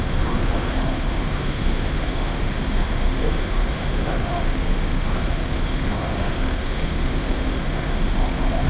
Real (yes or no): no